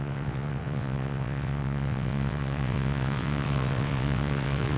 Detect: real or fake fake